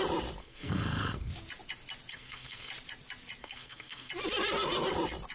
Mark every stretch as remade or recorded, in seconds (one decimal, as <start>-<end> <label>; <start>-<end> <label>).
0.0-0.4 recorded; 0.4-1.3 remade; 1.3-2.1 recorded; 2.1-2.7 remade; 2.7-3.4 recorded; 3.4-4.1 remade; 4.1-5.3 recorded